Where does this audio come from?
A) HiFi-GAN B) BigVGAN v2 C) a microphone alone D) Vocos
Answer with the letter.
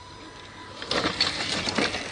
C